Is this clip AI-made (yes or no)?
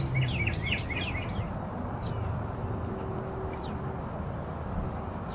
no